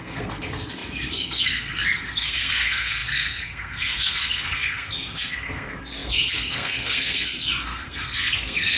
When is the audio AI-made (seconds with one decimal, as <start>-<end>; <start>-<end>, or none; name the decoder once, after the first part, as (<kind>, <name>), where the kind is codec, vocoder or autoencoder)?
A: 0.0-8.8 (codec, SNAC)